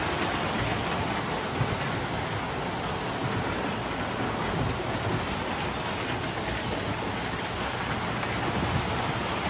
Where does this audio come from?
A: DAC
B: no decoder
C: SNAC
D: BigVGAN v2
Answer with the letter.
B